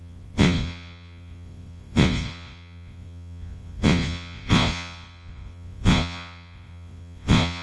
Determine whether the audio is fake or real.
fake